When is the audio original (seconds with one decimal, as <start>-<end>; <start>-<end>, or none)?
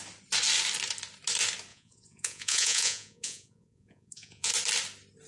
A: 0.0-1.7; 4.5-5.3